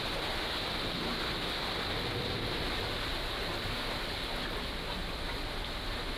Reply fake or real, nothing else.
real